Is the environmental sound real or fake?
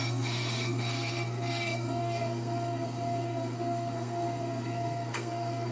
fake